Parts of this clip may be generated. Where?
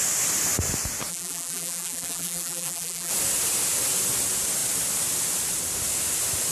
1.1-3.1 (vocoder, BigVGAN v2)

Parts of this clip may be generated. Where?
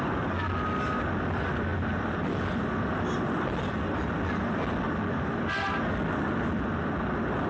none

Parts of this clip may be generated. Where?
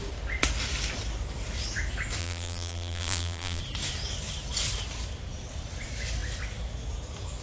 2.2-3.6 (vocoder, BigVGAN v2)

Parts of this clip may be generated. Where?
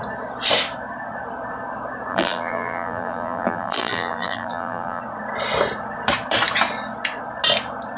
2.1-5.0 (vocoder, BigVGAN v2)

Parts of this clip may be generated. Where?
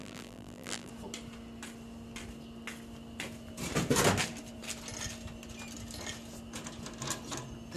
0.0-0.9 (vocoder, BigVGAN v2)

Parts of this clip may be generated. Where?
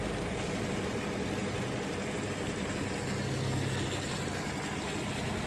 none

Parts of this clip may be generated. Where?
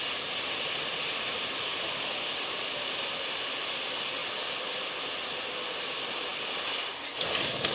none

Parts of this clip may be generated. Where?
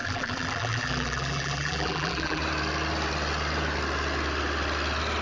0.0-2.4 (vocoder, BigVGAN v2)